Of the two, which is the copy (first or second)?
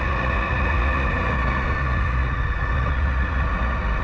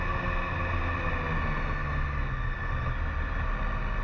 first